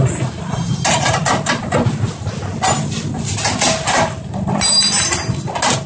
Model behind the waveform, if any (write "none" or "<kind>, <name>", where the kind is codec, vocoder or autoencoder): none